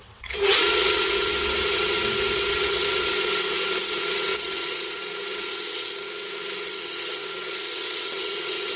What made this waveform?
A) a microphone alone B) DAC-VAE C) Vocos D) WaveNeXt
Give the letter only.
D